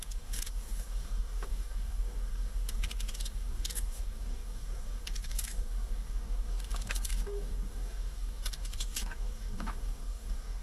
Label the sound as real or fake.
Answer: fake